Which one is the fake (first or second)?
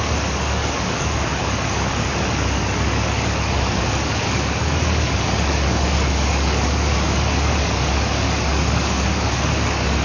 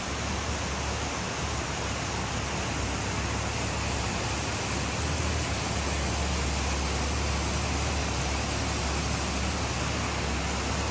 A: first